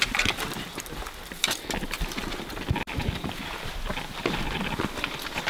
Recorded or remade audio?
remade